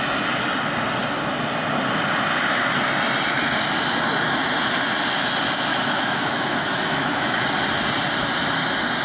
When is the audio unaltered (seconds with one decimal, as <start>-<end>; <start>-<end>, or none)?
0.0-5.7; 7.4-9.0